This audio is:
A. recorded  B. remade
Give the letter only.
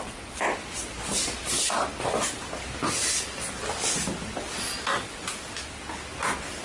A